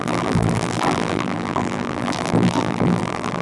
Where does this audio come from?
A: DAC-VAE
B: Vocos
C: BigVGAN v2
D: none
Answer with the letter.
C